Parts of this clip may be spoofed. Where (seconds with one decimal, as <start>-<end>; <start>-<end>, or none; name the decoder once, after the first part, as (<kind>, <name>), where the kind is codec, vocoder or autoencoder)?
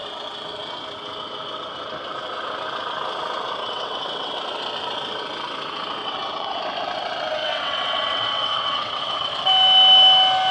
3.6-4.4 (vocoder, WaveNeXt); 6.0-6.6; 7.4-9.3